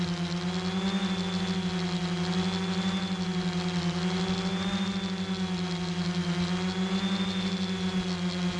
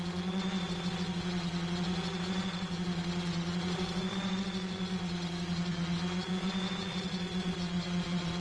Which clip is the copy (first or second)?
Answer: second